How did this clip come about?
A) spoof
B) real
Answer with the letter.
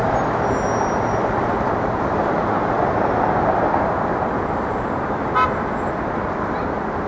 B